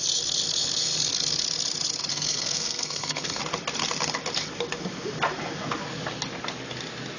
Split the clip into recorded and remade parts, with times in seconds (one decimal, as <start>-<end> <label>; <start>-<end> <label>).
0.0-2.1 recorded; 2.1-3.4 remade; 3.4-7.2 recorded